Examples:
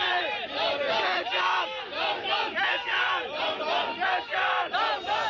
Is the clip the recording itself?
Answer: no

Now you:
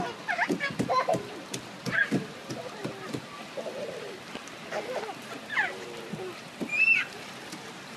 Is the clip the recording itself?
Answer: yes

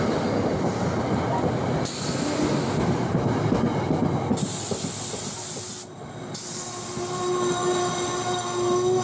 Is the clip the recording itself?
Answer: yes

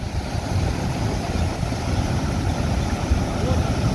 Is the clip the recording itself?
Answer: yes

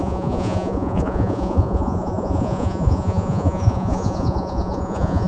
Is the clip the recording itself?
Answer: no